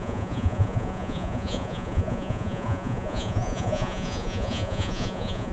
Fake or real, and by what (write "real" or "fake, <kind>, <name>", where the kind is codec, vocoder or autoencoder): fake, vocoder, Vocos